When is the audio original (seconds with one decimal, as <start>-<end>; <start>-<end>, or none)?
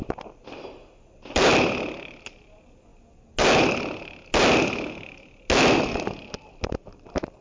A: 0.0-7.4